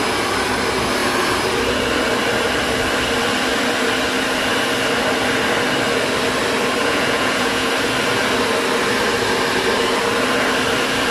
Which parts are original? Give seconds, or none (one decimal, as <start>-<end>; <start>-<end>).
0.0-6.8; 7.7-11.1